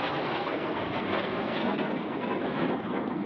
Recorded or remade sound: remade